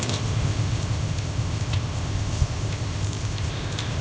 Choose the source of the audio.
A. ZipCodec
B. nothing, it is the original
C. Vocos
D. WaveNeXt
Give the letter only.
A